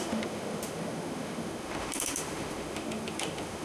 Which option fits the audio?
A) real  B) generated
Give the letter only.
B